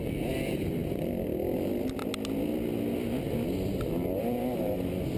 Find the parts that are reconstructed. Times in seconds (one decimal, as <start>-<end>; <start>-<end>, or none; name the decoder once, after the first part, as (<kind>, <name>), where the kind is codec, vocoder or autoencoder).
none